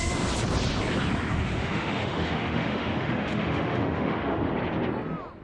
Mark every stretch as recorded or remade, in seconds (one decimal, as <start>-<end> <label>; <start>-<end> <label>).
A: 0.0-1.3 recorded; 1.3-4.5 remade; 4.5-5.4 recorded